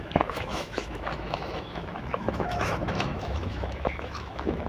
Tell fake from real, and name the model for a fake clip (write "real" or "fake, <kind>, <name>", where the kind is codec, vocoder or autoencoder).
fake, autoencoder, DAC-VAE